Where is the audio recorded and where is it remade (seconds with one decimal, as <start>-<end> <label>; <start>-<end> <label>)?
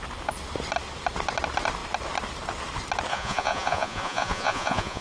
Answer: 0.0-3.1 recorded; 3.1-5.0 remade